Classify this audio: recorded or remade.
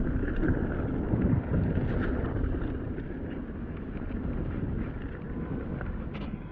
recorded